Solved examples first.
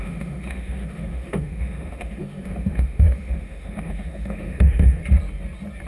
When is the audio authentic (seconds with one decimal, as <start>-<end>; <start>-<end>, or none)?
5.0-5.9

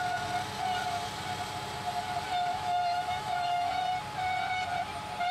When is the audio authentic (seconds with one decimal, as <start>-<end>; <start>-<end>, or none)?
0.0-2.5; 3.7-5.3

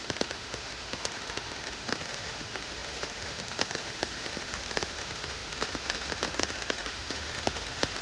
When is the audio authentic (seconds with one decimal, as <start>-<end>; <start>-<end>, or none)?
none

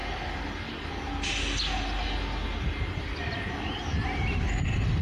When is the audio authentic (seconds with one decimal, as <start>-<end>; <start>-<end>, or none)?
0.0-5.0

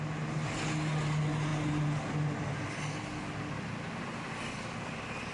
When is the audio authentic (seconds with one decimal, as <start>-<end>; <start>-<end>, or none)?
0.0-5.3

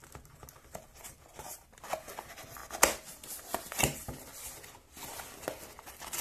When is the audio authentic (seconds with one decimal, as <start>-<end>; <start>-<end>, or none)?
0.0-6.2

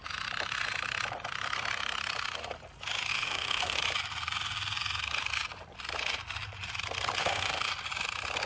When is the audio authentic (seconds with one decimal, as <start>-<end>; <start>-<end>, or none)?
0.0-3.1; 3.8-7.2; 7.7-8.5

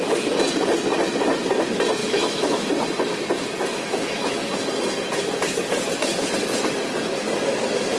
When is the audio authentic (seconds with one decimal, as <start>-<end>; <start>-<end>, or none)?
0.0-2.0; 2.7-3.7; 4.5-8.0